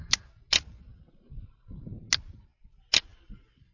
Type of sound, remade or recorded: recorded